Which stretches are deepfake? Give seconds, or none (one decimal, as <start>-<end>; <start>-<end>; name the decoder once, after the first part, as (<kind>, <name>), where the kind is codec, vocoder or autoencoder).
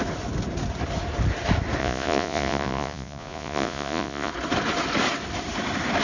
1.8-4.3 (vocoder, Vocos)